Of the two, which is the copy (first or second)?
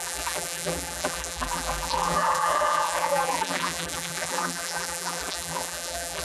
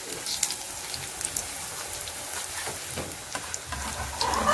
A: first